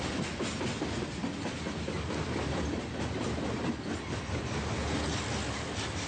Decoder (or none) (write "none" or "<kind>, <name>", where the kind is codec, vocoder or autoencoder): none